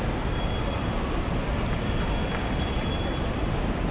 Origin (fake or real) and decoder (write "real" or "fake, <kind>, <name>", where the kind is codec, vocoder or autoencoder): real